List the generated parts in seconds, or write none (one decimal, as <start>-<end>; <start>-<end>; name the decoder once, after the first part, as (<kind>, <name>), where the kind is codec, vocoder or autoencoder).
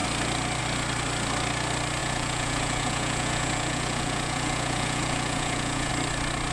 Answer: 2.0-5.9 (vocoder, Vocos)